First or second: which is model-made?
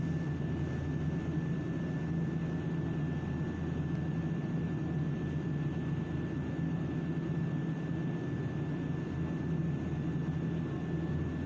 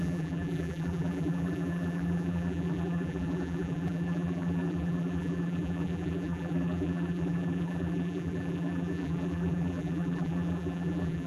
second